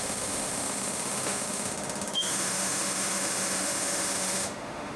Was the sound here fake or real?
fake